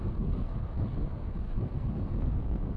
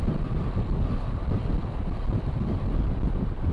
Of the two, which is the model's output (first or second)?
first